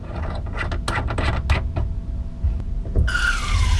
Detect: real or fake real